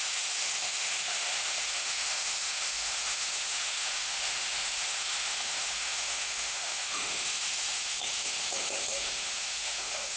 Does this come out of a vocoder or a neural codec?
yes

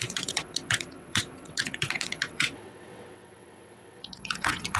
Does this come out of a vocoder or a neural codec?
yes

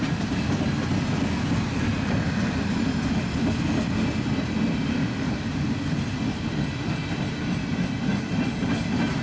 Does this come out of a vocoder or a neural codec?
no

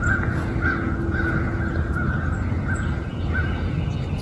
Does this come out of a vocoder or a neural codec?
yes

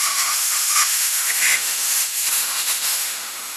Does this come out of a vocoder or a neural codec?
yes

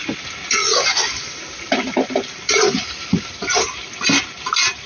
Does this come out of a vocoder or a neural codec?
no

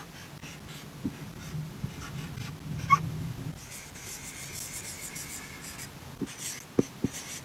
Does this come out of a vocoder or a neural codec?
no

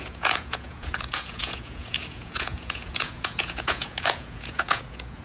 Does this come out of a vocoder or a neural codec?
yes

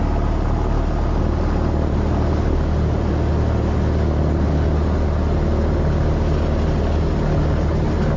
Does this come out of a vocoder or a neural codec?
no